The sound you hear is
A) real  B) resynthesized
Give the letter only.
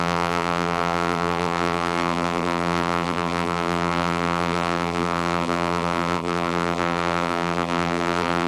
B